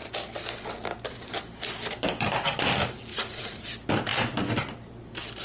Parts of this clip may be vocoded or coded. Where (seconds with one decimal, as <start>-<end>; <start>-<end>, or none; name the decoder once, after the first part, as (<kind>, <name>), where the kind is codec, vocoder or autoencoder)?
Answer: 3.1-3.6 (vocoder, Vocos)